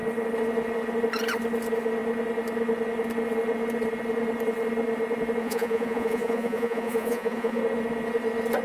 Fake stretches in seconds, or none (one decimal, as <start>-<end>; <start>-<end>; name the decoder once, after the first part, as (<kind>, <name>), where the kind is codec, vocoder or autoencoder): 5.4-7.6 (vocoder, Vocos)